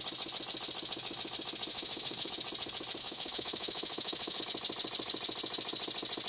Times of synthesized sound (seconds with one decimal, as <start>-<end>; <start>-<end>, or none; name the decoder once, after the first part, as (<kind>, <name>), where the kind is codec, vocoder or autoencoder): 1.7-2.3 (autoencoder, DAC-VAE); 3.0-4.4